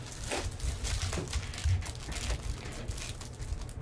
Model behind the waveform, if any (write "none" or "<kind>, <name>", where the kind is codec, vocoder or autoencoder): none